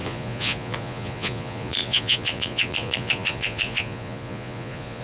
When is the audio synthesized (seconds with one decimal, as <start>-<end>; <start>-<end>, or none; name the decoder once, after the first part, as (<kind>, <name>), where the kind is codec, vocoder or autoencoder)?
0.0-5.0 (vocoder, Vocos)